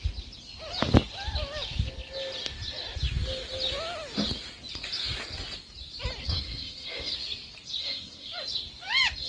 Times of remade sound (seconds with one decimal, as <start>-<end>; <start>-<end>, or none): 6.2-7.1; 7.8-8.3